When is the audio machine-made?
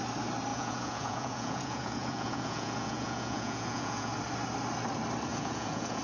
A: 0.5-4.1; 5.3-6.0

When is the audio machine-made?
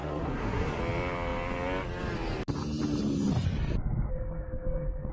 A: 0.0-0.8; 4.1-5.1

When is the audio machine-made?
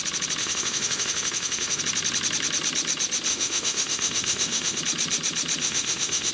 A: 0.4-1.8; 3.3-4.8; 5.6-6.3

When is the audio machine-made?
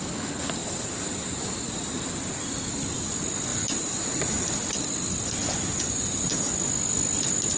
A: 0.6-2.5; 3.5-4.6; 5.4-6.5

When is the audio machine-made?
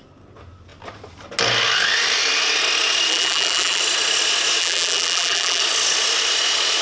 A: 3.1-3.8; 4.6-5.6